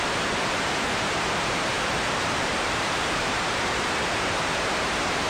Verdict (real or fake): fake